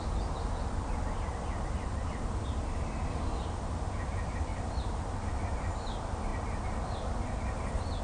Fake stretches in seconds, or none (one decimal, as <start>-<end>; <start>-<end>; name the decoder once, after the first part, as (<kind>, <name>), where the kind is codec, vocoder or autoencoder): 4.5-5.3 (vocoder, BigVGAN v2)

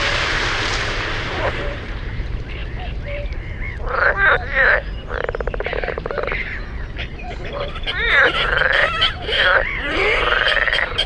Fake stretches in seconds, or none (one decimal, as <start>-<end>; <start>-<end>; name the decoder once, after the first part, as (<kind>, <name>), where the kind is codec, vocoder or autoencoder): 0.0-11.1 (vocoder, BigVGAN v2)

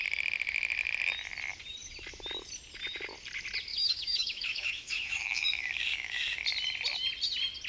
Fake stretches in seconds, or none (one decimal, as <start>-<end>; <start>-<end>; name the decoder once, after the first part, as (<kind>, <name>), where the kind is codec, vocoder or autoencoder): 3.7-6.4 (autoencoder, DAC-VAE)

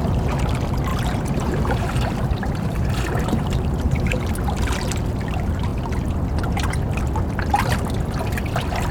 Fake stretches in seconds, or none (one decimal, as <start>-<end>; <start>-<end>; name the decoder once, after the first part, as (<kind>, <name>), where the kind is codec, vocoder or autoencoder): 0.9-4.3 (vocoder, BigVGAN v2)